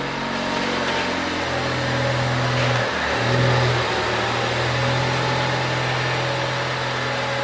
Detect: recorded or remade recorded